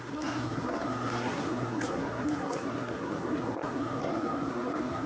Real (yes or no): no